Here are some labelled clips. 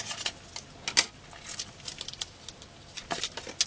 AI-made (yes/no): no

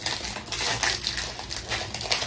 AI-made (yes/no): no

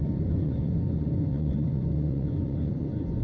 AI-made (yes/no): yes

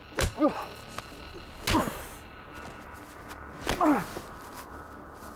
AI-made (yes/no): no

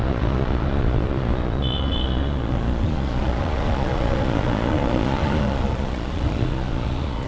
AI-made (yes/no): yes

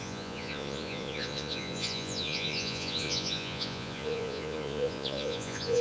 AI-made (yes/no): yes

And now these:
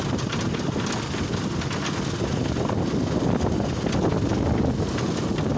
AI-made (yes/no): no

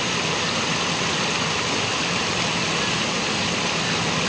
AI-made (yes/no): no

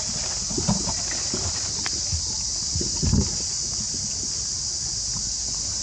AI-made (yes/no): no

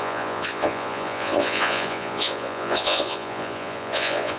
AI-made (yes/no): yes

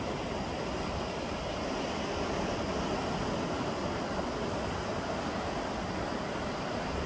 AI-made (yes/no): no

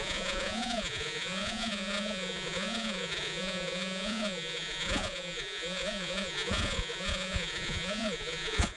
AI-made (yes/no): yes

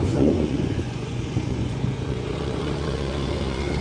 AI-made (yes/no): yes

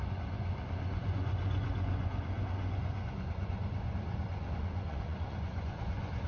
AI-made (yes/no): yes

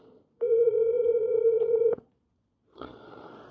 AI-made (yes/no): yes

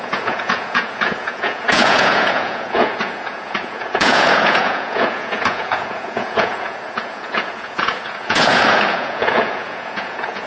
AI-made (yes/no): yes